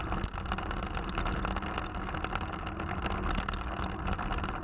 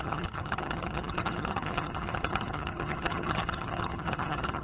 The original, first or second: first